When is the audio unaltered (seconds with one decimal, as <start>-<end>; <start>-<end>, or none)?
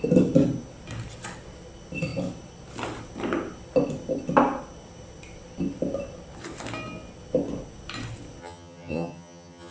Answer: 0.0-8.4